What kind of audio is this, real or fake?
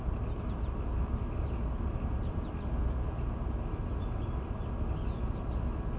real